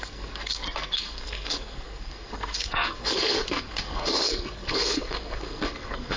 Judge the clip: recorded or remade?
remade